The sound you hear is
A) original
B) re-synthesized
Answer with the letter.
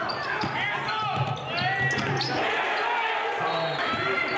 A